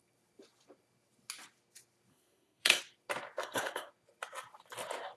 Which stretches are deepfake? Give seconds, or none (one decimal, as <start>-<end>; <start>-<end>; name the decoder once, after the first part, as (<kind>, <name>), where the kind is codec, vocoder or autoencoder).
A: 2.1-2.8 (codec, SNAC); 3.4-3.9